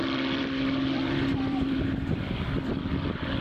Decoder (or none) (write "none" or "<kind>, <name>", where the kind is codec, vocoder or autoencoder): vocoder, BigVGAN v2